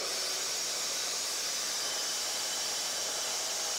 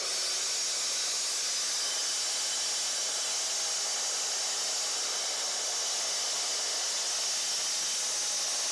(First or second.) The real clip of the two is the second